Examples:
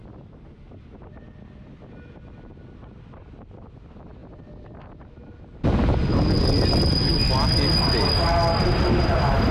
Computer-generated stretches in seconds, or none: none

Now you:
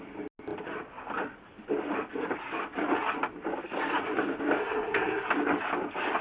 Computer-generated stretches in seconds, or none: 4.6-5.3